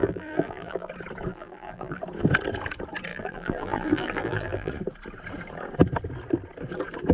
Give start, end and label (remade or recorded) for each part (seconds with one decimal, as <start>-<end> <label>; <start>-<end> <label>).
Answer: 0.0-0.9 remade; 0.9-1.3 recorded; 1.3-2.0 remade; 2.0-3.1 recorded; 3.1-4.7 remade; 4.7-7.1 recorded